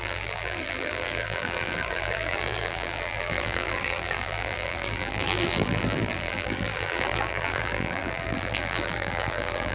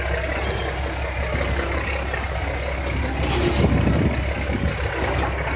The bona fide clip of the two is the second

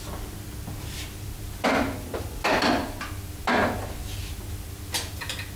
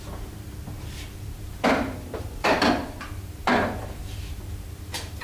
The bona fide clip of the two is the first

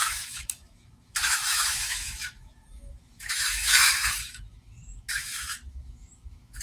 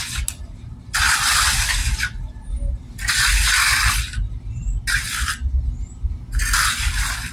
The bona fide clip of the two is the second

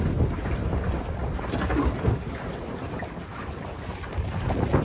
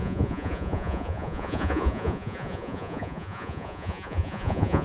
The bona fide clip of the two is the first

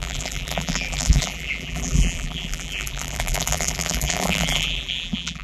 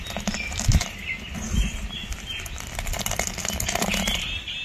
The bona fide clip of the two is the second